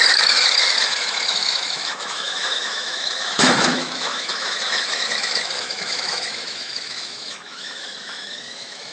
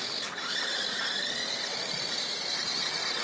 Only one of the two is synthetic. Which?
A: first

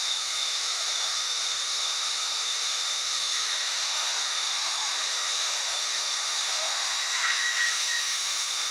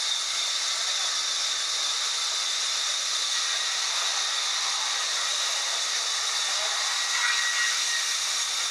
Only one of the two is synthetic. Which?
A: first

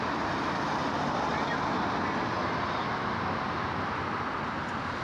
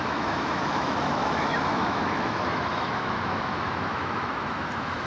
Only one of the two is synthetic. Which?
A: second